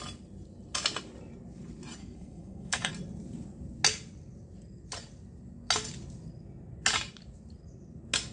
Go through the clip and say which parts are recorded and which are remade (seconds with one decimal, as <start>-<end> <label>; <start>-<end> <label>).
0.0-2.0 recorded; 2.0-2.9 remade; 2.9-8.3 recorded